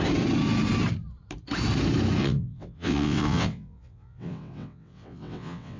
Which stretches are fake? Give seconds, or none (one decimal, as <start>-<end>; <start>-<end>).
2.2-5.8